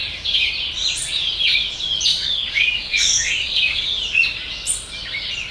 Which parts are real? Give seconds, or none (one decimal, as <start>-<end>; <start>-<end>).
0.0-2.1; 3.9-5.5